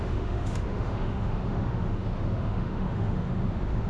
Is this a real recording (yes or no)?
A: no